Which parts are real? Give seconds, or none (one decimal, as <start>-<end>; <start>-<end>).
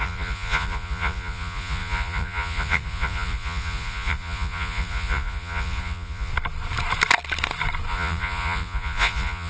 6.3-7.9